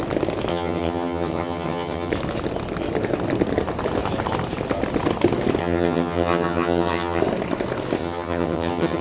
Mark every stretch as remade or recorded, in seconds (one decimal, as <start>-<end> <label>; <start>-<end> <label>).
0.0-0.5 recorded; 0.5-2.1 remade; 2.1-5.6 recorded; 5.6-7.2 remade; 7.2-8.0 recorded; 8.0-9.0 remade